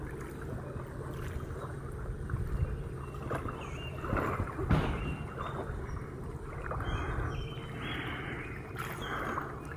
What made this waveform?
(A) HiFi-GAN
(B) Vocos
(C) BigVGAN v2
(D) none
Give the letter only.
D